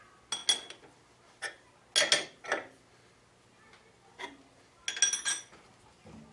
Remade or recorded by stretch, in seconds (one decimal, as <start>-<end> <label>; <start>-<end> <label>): 0.0-6.3 recorded